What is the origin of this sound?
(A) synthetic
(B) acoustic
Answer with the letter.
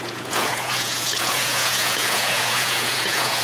A